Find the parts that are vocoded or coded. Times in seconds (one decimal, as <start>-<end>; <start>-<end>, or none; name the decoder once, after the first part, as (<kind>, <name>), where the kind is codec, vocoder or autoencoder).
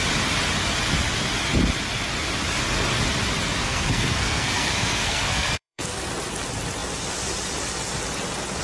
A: 3.6-6.0 (codec, SNAC)